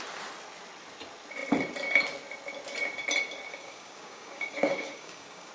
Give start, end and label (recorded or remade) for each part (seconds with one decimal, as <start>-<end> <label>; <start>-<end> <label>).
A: 0.0-3.5 recorded; 3.5-5.5 remade